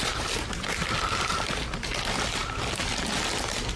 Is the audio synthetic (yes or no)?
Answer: no